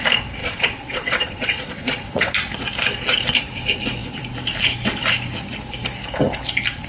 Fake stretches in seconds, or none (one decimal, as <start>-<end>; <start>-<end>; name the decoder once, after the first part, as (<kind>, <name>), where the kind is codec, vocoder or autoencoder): 0.4-2.3 (vocoder, Vocos)

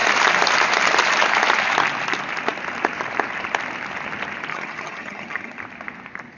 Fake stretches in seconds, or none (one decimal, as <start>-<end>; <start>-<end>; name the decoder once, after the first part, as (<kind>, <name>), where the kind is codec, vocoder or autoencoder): 4.5-5.6 (vocoder, HiFi-GAN)